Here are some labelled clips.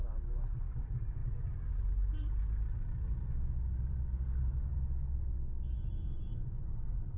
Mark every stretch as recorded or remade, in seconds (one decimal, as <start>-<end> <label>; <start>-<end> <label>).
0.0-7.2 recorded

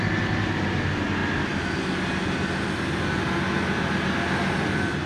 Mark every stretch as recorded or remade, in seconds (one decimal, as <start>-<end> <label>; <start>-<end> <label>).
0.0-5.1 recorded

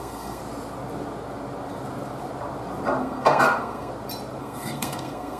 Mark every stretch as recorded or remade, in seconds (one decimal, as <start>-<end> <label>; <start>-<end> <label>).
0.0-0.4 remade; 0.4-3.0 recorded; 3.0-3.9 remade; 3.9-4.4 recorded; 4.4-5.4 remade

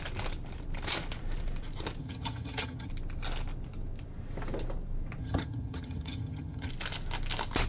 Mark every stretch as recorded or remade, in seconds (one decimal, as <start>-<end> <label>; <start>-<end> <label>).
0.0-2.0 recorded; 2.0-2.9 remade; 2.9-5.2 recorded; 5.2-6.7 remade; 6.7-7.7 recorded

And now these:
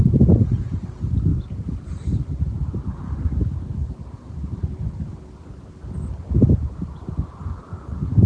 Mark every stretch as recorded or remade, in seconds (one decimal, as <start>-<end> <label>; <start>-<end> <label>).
0.0-8.3 recorded

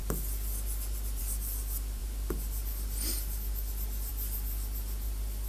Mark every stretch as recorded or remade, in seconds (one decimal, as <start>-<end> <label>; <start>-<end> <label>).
0.0-2.0 recorded; 2.0-4.1 remade; 4.1-5.5 recorded

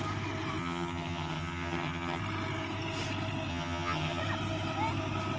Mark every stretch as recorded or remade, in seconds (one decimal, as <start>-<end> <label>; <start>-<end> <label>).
0.0-0.6 recorded; 0.6-2.2 remade; 2.2-3.5 recorded; 3.5-4.2 remade; 4.2-5.4 recorded